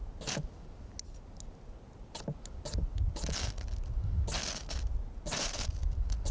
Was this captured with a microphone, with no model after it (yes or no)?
yes